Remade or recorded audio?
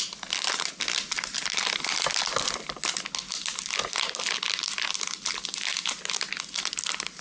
recorded